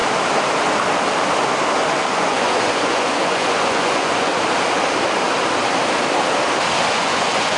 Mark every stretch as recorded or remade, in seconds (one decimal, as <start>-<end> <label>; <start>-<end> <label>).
0.0-2.1 recorded; 2.1-4.3 remade; 4.3-6.9 recorded; 6.9-7.6 remade